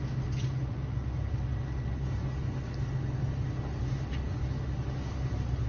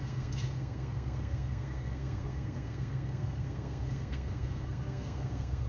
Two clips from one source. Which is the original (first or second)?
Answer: first